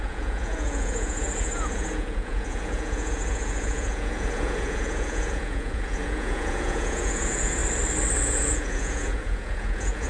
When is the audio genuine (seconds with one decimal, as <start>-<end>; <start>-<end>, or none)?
7.6-8.2